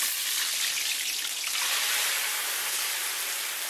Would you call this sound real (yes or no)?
yes